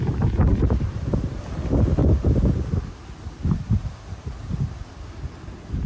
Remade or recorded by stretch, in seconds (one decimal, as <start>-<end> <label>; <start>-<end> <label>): 0.0-5.9 recorded